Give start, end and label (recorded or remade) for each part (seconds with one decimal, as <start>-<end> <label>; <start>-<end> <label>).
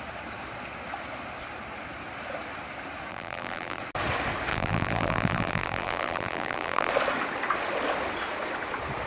0.0-3.1 recorded; 3.1-3.8 remade; 3.8-4.5 recorded; 4.5-6.9 remade; 6.9-9.1 recorded